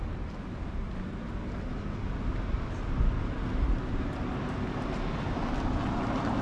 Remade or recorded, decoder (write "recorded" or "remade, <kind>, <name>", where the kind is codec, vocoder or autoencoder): recorded